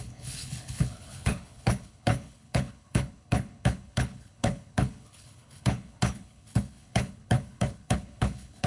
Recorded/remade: remade